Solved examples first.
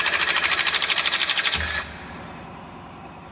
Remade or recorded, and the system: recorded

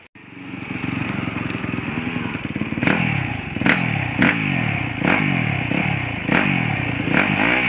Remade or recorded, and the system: recorded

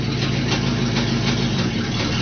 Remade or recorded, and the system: recorded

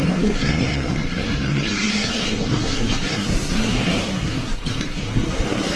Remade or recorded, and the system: remade, codec, SNAC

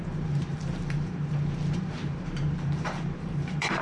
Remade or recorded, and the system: remade, vocoder, BigVGAN v2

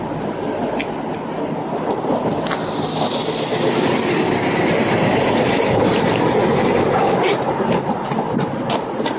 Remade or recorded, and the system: recorded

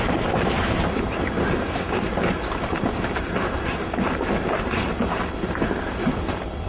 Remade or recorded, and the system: recorded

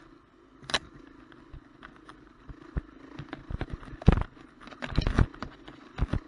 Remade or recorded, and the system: recorded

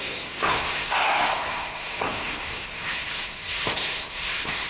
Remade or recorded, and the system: remade, codec, SNAC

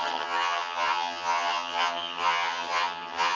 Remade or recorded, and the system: remade, vocoder, HiFi-GAN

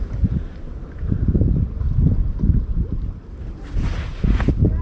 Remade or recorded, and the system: remade, vocoder, BigVGAN v2